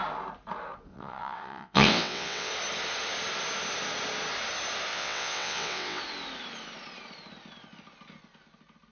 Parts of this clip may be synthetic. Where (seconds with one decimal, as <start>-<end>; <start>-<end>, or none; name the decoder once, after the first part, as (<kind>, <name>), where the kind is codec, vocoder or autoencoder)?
0.9-2.5 (vocoder, WaveNeXt); 4.9-6.0